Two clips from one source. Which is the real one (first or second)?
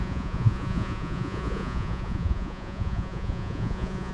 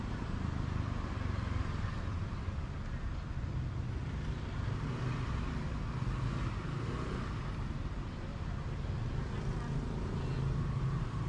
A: second